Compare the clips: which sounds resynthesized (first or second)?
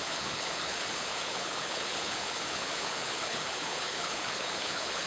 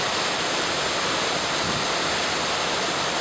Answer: first